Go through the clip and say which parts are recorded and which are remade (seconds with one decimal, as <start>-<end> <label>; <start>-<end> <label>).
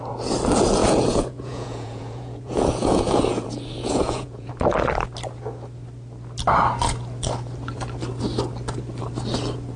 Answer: 0.0-0.8 recorded; 0.8-4.5 remade; 4.5-9.8 recorded